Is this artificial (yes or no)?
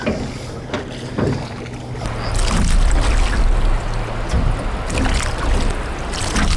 no